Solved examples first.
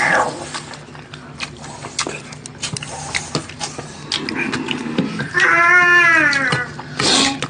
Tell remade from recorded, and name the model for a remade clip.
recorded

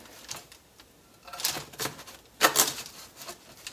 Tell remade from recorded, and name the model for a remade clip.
recorded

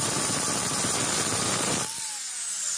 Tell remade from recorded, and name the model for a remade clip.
recorded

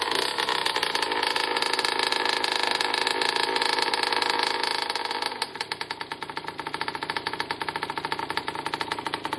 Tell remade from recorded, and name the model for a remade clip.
recorded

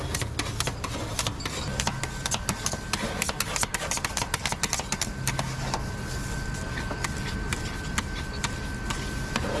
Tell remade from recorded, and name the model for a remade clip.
recorded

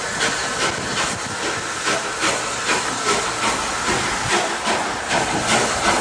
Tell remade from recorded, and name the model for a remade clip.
recorded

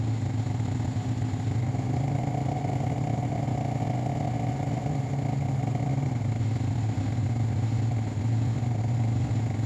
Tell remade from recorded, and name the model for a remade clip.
recorded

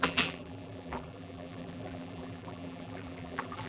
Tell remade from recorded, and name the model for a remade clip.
remade, vocoder, BigVGAN v2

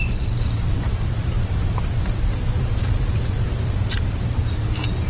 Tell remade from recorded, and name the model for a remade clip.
remade, vocoder, BigVGAN v2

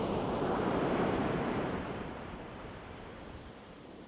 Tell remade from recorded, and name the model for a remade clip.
remade, vocoder, BigVGAN v2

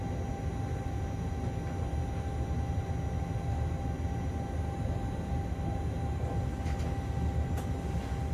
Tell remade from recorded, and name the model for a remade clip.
recorded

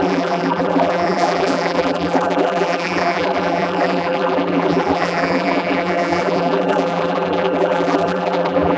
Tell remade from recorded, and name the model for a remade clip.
remade, vocoder, BigVGAN v2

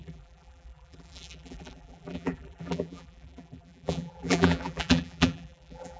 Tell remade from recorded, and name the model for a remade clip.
remade, vocoder, BigVGAN v2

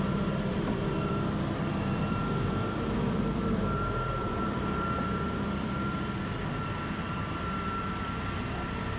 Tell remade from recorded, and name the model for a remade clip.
remade, vocoder, BigVGAN v2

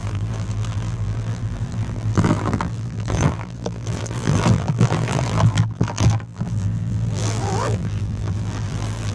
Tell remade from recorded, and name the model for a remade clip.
remade, vocoder, BigVGAN v2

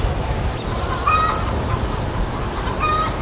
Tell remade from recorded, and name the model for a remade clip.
recorded